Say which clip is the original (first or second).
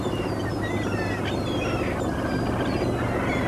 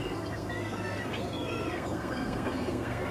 first